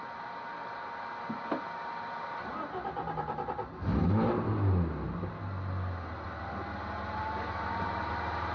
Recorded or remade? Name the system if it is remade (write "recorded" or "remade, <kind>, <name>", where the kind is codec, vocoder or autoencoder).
recorded